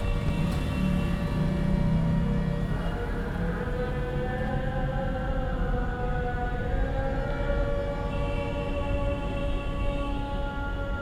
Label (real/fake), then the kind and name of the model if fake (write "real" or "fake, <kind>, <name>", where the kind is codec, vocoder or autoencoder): real